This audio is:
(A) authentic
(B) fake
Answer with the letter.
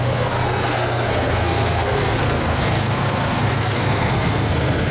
B